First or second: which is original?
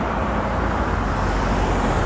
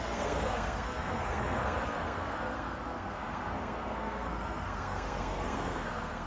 first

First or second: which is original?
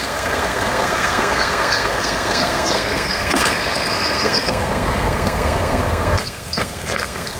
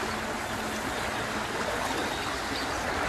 second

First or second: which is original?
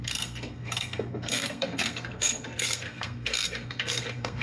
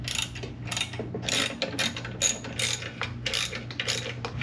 second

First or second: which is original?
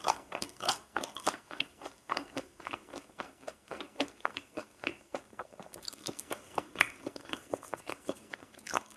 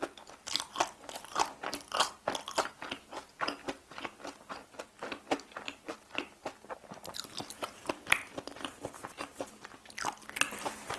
second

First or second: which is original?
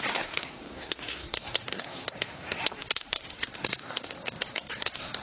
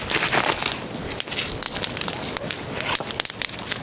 second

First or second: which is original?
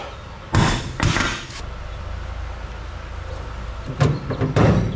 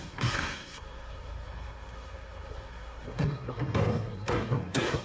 first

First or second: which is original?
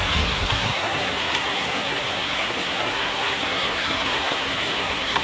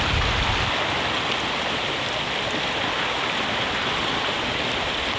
second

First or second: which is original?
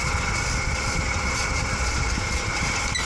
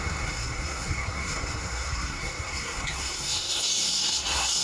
first